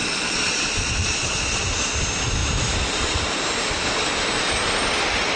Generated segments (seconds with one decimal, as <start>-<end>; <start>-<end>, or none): 0.0-1.6